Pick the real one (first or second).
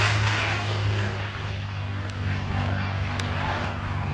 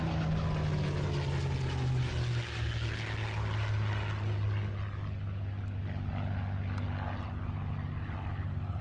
second